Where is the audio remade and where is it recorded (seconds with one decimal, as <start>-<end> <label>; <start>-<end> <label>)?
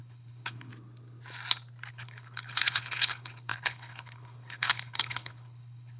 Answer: 0.0-0.7 remade; 0.7-1.9 recorded; 1.9-6.0 remade